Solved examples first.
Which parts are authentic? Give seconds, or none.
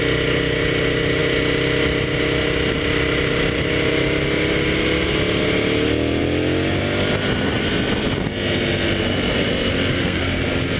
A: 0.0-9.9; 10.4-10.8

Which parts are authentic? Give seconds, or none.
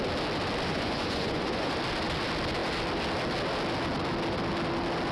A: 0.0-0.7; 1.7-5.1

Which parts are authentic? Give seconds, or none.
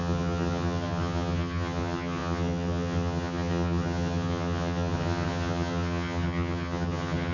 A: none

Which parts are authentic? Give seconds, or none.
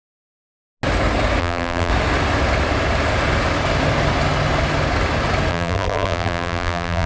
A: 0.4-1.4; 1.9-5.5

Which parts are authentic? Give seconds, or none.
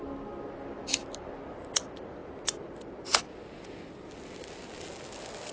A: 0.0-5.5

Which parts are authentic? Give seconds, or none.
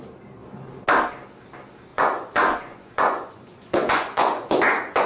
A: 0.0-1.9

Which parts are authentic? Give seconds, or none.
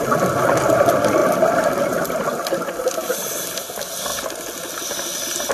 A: 1.2-3.1; 4.1-5.5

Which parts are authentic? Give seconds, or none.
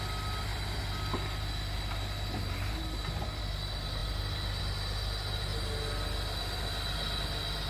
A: 0.0-7.7